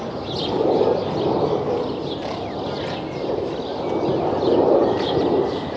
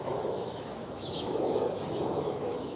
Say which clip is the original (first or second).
first